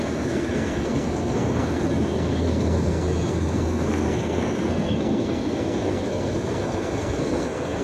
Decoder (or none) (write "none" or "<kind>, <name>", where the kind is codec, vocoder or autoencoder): codec, SNAC